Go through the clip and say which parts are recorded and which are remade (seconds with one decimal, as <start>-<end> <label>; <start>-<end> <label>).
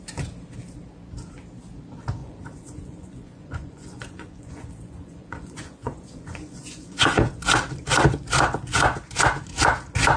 0.0-2.2 recorded; 2.2-7.4 remade; 7.4-10.2 recorded